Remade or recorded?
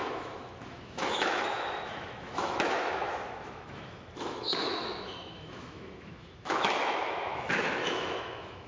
remade